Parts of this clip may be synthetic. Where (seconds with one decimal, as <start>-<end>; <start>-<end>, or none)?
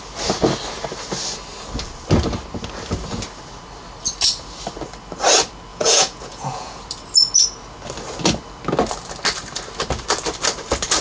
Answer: 5.7-6.8